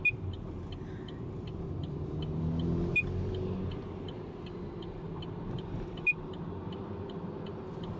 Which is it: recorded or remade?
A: recorded